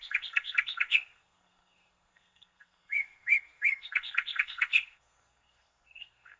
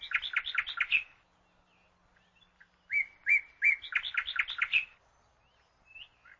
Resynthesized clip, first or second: first